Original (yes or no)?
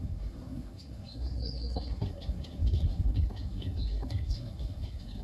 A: no